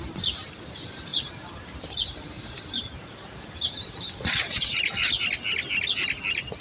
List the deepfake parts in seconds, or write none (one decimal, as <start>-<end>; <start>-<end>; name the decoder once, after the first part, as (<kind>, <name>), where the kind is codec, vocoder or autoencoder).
1.1-5.1 (vocoder, BigVGAN v2)